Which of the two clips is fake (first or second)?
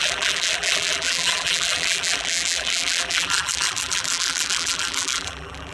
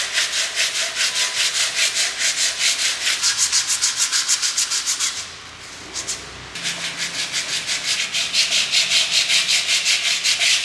first